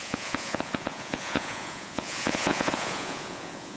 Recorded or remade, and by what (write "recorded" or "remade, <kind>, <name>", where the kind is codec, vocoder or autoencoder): remade, vocoder, Vocos